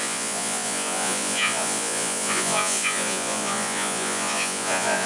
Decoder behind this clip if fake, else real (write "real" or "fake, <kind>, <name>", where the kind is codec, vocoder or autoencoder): fake, vocoder, Vocos